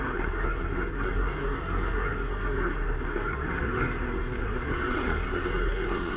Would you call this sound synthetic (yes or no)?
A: yes